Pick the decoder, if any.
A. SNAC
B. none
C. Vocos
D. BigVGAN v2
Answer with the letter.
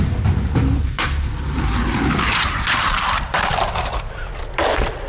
D